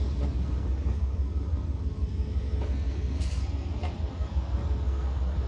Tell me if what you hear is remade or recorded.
remade